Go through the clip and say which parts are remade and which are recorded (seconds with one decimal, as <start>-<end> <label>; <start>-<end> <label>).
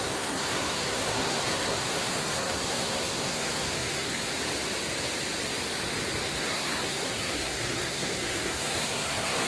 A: 0.0-4.3 remade; 4.3-6.2 recorded; 6.2-9.5 remade